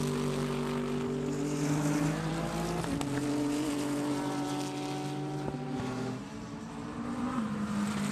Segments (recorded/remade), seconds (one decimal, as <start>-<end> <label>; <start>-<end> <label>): 0.0-6.2 recorded; 6.2-8.1 remade